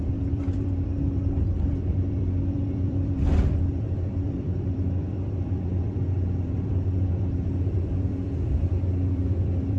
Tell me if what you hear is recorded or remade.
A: remade